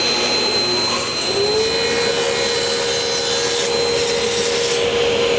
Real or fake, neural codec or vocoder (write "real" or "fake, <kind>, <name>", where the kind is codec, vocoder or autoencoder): real